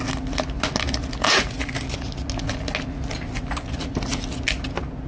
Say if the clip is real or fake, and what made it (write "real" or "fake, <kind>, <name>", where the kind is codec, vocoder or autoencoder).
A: real